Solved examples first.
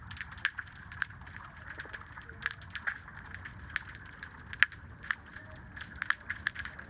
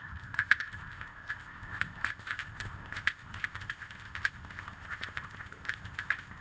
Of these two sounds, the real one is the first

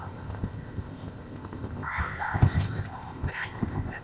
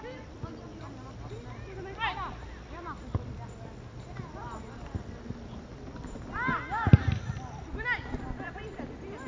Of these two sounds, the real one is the second